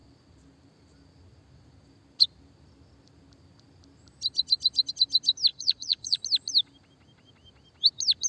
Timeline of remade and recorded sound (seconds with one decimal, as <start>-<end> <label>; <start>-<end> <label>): 0.0-5.5 recorded; 5.5-6.2 remade; 6.2-8.3 recorded